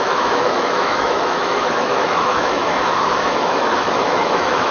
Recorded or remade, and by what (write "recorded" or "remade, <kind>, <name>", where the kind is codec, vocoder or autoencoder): remade, autoencoder, DAC-VAE